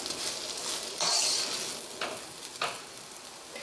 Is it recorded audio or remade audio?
recorded